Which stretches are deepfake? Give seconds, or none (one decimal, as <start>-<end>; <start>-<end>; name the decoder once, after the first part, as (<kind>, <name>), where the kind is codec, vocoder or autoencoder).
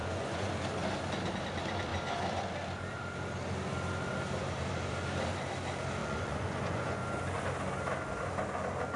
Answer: 0.0-0.5 (vocoder, Vocos); 6.0-7.2